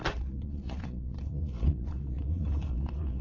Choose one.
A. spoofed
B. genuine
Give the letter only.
A